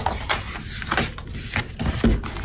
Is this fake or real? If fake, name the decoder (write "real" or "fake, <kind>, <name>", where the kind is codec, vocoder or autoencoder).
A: real